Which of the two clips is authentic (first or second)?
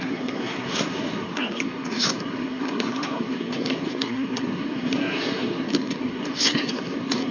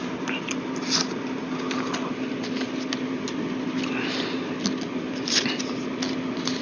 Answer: second